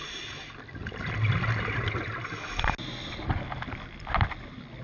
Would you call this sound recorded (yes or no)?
yes